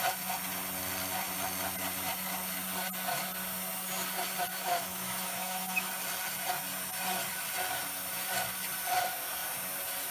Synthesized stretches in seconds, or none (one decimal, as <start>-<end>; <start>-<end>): 4.5-5.9